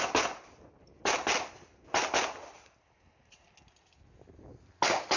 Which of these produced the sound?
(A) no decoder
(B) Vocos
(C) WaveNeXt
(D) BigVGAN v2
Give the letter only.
A